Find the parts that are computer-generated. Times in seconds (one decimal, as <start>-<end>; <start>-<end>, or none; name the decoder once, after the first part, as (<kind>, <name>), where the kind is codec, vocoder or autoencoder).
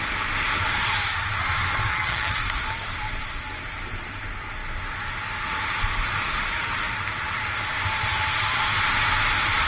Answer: 1.9-2.4 (vocoder, HiFi-GAN)